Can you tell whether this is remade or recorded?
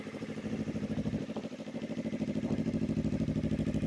remade